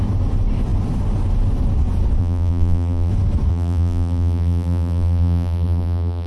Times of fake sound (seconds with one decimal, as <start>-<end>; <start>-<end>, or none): 2.2-3.1; 3.5-6.3